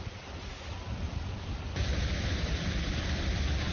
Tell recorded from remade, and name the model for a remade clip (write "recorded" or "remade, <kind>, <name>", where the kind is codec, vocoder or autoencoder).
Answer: remade, vocoder, BigVGAN v2